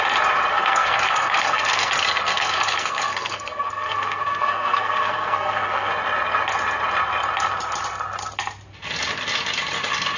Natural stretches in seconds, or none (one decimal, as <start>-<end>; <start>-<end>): 0.0-0.5; 1.9-2.3; 5.9-10.2